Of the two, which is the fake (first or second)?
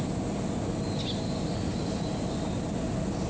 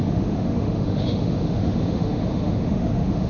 second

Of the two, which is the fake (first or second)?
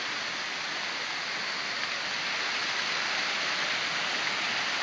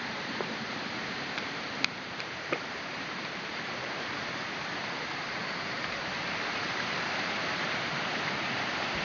second